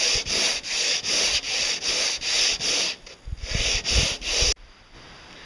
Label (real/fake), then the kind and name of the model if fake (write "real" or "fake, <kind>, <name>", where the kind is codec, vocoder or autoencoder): real